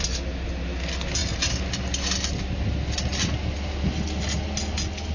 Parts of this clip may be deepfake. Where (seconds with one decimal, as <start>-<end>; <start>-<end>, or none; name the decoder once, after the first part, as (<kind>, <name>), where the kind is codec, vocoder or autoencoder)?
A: none